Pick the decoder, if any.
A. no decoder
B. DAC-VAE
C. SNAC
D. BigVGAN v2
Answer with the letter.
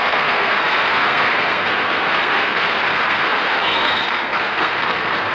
C